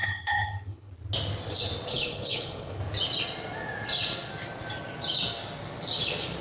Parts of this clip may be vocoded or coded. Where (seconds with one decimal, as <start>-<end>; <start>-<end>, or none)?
0.0-0.9; 1.9-2.8